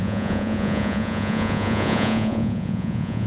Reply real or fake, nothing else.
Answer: fake